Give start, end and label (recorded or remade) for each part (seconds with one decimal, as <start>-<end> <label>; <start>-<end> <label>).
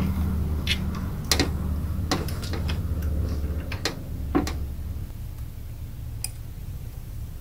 0.0-6.6 recorded; 6.6-7.4 remade